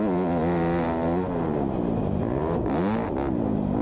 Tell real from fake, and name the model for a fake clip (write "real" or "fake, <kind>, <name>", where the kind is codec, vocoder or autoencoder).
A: real